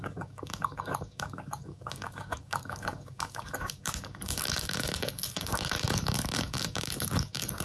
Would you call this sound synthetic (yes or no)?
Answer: yes